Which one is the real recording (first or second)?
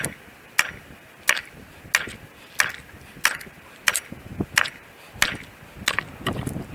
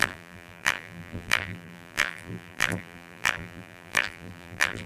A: first